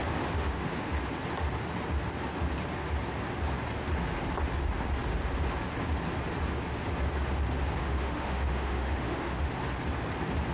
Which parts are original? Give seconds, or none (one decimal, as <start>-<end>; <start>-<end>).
0.0-0.4; 0.9-7.8; 9.5-10.5